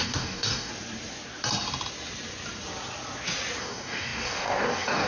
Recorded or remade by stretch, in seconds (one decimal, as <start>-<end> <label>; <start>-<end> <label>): 0.0-0.7 remade; 0.7-3.6 recorded; 3.6-5.1 remade